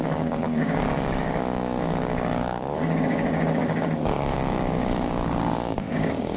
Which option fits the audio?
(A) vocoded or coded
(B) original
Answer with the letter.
A